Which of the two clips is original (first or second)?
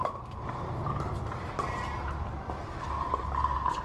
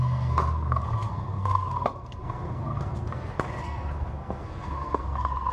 first